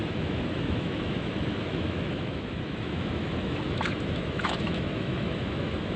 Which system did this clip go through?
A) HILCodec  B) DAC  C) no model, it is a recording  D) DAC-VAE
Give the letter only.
D